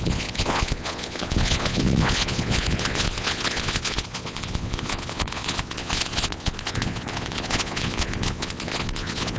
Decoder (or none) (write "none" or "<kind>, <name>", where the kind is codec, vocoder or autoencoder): vocoder, Vocos